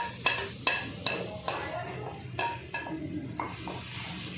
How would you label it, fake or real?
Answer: real